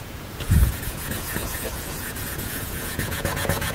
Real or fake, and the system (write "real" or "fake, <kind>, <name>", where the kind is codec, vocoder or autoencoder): fake, vocoder, Vocos